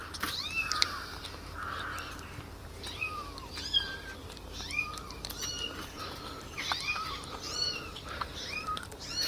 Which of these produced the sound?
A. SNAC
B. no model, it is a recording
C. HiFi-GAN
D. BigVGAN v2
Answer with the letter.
D